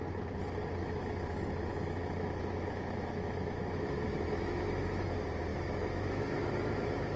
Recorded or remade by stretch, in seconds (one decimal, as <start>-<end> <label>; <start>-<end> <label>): 0.0-0.8 recorded; 0.8-5.0 remade; 5.0-5.5 recorded; 5.5-7.2 remade

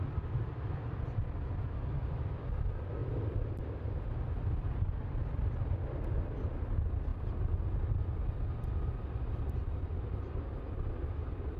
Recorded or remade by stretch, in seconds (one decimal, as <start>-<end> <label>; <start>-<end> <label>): 0.0-11.6 recorded

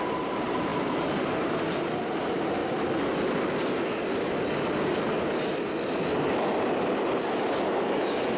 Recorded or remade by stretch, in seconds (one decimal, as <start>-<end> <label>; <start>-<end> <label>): 0.0-2.6 remade; 2.6-7.6 recorded; 7.6-8.4 remade

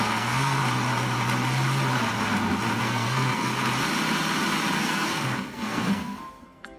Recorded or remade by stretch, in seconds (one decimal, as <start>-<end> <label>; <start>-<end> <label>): 0.0-0.6 remade; 0.6-2.8 recorded; 2.8-3.5 remade; 3.5-4.8 recorded; 4.8-6.8 remade

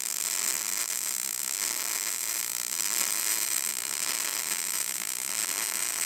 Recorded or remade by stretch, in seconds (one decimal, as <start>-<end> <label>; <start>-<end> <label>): 0.0-2.5 recorded; 2.5-3.7 remade; 3.7-6.1 recorded